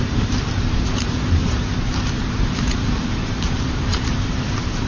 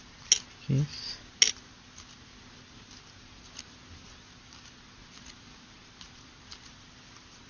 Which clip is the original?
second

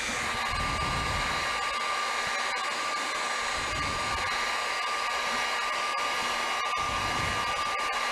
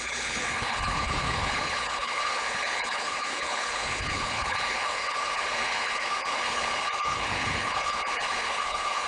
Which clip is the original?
first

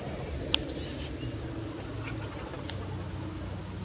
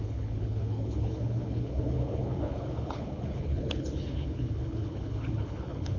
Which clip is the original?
first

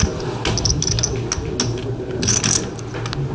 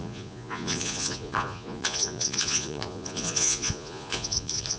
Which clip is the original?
first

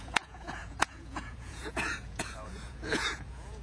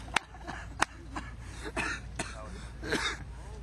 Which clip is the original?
second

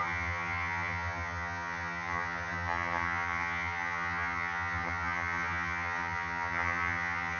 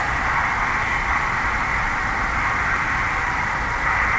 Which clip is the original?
second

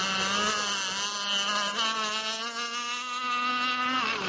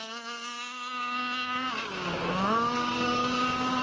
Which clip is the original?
first